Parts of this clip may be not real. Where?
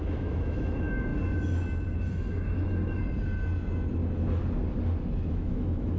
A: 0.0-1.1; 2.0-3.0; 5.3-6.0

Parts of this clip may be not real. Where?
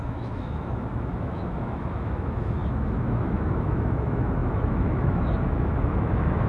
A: 0.0-6.5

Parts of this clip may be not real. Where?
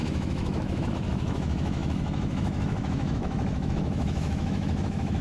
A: 0.0-5.2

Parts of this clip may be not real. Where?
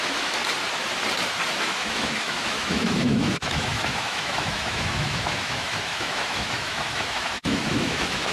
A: 0.0-0.4; 1.6-8.3